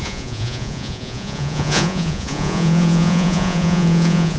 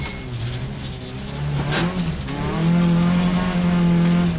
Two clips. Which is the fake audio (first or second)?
first